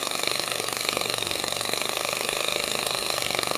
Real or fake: fake